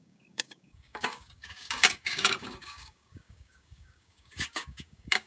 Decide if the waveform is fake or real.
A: fake